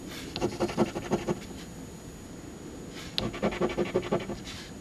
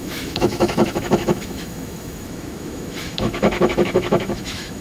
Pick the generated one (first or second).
second